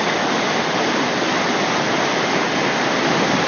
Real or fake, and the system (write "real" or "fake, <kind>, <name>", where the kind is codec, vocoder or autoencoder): real